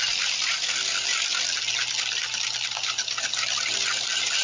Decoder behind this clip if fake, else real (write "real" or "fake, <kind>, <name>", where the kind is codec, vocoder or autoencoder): real